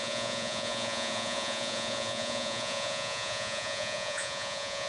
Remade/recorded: remade